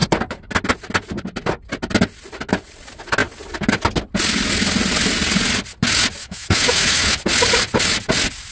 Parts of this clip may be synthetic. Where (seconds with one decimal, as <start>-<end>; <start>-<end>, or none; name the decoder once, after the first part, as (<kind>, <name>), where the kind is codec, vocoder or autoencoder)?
6.2-7.2 (autoencoder, DAC-VAE)